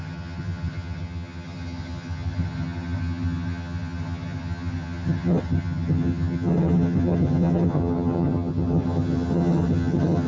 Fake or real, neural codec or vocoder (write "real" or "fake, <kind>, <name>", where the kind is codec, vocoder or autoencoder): fake, vocoder, HiFi-GAN